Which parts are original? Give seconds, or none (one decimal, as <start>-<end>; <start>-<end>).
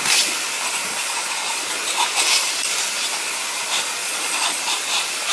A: 0.0-0.9; 1.6-4.0; 4.6-5.3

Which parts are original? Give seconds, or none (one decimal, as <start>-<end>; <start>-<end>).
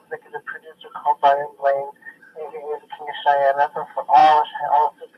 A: 0.0-1.6; 3.0-4.2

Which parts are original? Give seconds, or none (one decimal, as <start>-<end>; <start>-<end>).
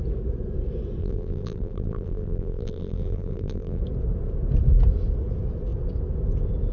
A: 0.0-1.0; 3.8-6.7